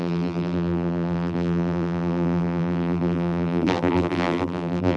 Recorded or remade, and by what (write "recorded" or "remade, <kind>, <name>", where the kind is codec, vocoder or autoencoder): remade, vocoder, BigVGAN v2